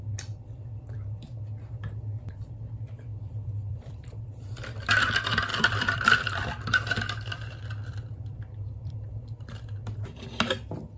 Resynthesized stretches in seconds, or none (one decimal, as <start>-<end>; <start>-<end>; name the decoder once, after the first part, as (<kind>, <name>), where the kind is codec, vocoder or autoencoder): 3.1-4.1 (vocoder, BigVGAN v2); 5.5-8.9